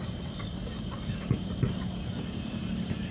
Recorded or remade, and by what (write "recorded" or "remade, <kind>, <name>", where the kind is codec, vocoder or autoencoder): recorded